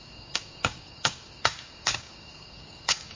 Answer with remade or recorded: remade